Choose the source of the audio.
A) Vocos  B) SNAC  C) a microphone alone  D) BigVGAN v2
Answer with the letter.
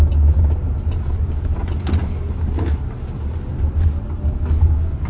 C